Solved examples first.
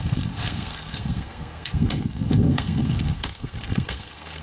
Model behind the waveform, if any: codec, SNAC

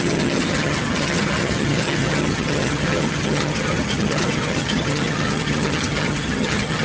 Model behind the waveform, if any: vocoder, HiFi-GAN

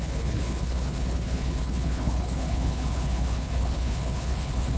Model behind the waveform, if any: codec, HILCodec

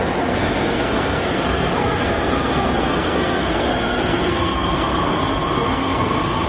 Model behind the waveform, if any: codec, SNAC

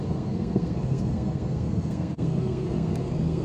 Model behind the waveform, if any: codec, SNAC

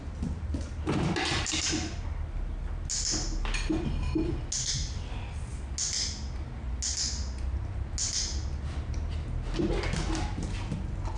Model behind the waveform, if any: none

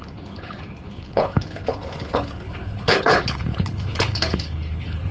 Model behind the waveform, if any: codec, HILCodec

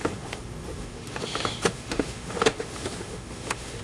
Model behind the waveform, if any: autoencoder, DAC-VAE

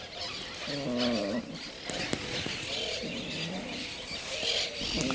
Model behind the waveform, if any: none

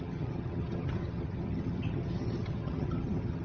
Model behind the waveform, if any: vocoder, HiFi-GAN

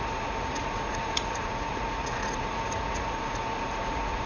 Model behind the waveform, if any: vocoder, Vocos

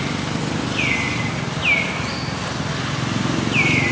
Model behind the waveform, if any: none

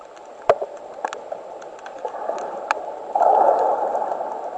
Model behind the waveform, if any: none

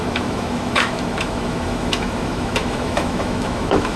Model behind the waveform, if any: autoencoder, DAC-VAE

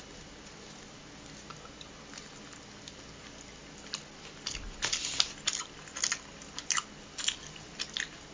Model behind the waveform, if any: none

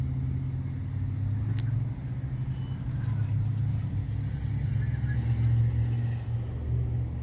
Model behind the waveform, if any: none